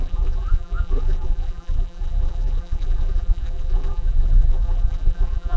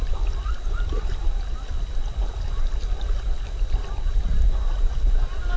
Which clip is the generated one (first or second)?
first